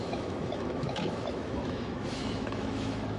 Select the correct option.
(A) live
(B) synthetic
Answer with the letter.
B